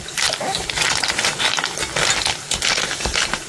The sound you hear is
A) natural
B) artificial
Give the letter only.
B